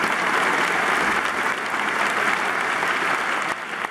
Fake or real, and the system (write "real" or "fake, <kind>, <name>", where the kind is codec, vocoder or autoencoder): real